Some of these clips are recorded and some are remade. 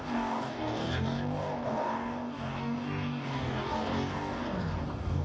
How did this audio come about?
remade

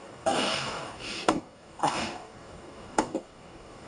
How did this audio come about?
remade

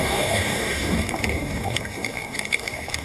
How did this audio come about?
remade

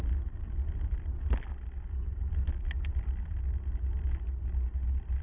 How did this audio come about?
recorded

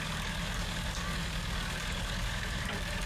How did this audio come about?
remade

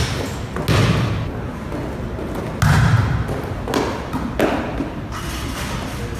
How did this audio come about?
recorded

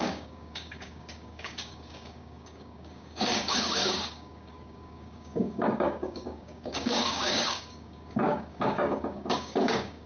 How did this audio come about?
remade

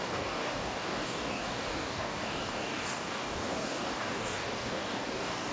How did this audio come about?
remade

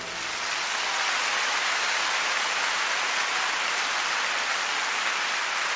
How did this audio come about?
recorded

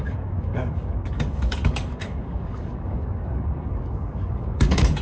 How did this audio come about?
remade